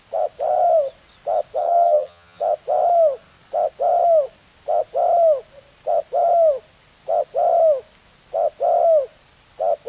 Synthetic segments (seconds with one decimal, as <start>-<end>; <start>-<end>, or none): 1.6-2.4

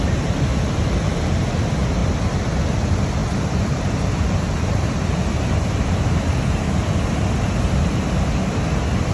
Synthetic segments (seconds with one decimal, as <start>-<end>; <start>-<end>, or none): 0.5-1.4; 3.2-5.5

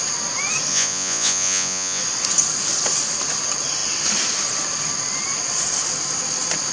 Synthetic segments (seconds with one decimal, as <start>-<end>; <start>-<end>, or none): 0.7-2.0

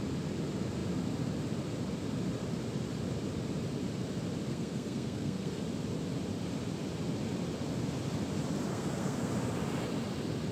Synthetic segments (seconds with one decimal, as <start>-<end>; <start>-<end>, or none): 4.5-5.6; 8.7-9.3